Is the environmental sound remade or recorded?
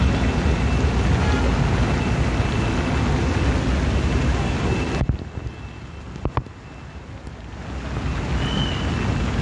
recorded